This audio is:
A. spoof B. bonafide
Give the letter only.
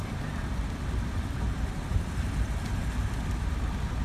B